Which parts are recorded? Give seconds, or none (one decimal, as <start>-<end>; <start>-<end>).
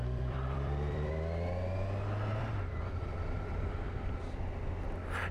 1.1-2.3; 3.7-5.3